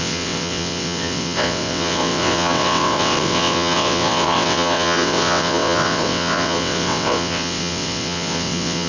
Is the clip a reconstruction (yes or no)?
yes